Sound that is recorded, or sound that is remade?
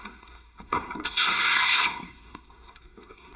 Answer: remade